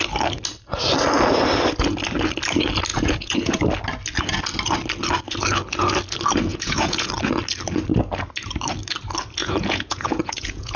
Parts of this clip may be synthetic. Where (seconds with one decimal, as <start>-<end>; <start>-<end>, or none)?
2.9-3.6; 6.5-7.1; 9.4-10.8